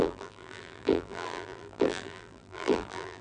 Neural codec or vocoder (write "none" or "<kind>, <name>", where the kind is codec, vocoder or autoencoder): vocoder, BigVGAN v2